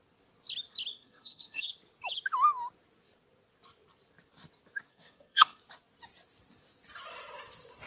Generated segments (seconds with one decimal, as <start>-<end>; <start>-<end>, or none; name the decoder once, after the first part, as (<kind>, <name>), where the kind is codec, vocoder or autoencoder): 0.9-1.7 (codec, SNAC); 4.9-5.6